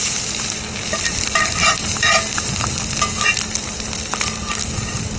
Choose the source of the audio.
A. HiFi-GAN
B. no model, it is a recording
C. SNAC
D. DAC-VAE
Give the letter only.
B